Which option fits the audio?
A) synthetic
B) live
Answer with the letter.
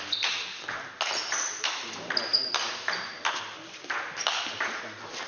B